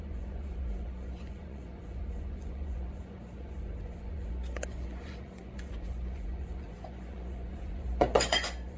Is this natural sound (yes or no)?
no